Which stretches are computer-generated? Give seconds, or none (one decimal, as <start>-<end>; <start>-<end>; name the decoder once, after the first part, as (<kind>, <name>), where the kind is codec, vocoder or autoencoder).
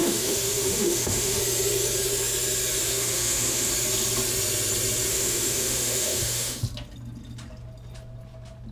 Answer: 0.0-1.4 (autoencoder, DAC-VAE); 2.8-3.7; 5.1-6.6